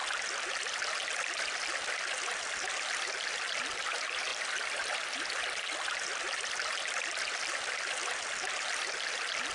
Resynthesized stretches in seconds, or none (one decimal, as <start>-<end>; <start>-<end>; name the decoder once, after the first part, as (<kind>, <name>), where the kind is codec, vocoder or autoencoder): none